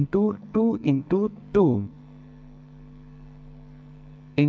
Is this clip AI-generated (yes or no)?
yes